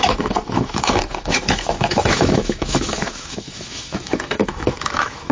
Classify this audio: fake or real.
fake